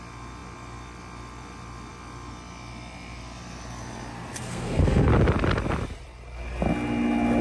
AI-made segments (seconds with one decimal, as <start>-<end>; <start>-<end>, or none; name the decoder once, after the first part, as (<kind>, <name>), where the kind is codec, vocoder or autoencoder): 4.1-5.1 (codec, SNAC)